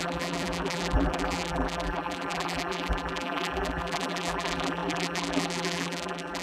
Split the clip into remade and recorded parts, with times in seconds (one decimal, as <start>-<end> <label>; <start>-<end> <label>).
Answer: 0.0-6.4 remade